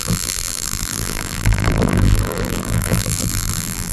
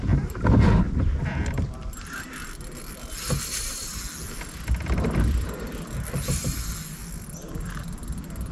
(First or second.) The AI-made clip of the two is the first